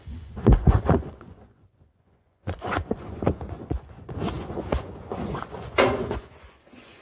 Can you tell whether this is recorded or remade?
remade